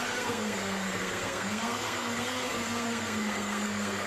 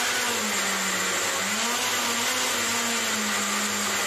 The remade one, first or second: first